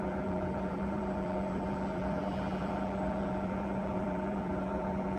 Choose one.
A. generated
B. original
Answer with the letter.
A